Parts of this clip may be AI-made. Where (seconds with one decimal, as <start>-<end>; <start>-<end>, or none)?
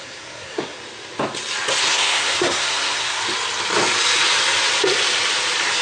0.0-0.8; 1.8-3.2